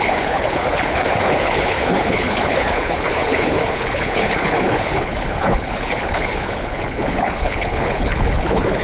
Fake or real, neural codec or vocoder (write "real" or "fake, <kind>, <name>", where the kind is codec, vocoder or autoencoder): fake, codec, HILCodec